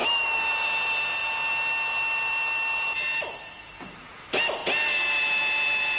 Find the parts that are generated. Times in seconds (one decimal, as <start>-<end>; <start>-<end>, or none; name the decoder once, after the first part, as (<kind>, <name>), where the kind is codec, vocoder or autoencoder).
0.0-0.5 (autoencoder, DAC-VAE)